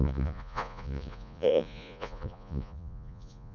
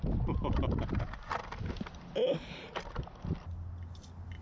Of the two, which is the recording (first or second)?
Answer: second